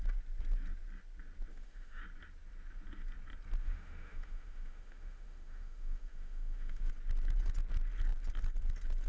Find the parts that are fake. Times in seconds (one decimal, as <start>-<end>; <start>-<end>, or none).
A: 1.5-2.0; 3.6-6.9